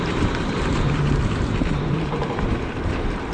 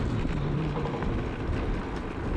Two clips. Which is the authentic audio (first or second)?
second